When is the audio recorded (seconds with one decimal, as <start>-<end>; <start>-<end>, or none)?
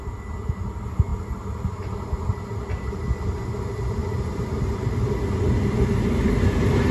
0.0-4.0; 4.6-6.9